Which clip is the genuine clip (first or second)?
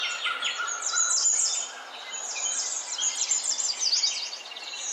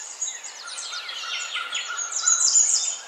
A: first